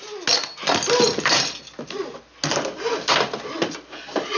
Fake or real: real